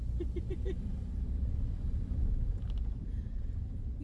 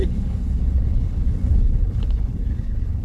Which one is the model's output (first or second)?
second